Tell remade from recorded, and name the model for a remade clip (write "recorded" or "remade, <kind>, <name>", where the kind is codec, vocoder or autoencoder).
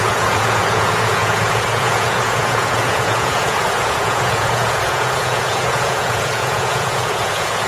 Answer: remade, vocoder, Vocos